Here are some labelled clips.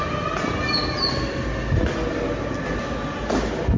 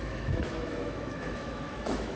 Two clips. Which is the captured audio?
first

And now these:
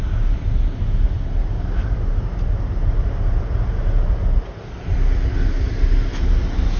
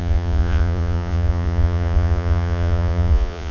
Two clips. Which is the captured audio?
first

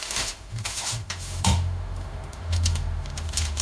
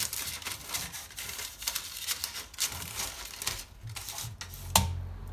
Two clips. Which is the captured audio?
second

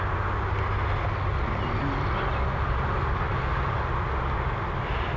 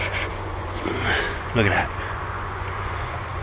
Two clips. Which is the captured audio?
first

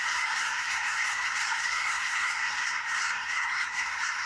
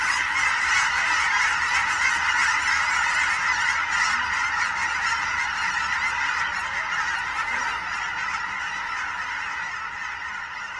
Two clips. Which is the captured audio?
second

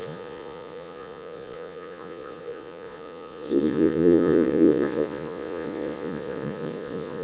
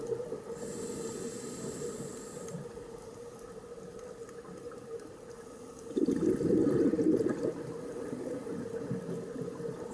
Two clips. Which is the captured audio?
second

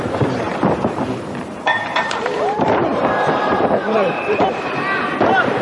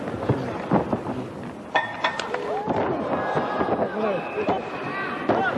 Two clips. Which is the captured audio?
second